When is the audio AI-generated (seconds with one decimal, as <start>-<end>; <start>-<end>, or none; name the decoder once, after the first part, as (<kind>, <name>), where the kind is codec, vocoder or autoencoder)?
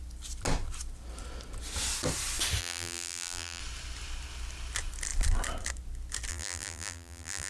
2.6-3.6 (vocoder, BigVGAN v2); 6.3-7.5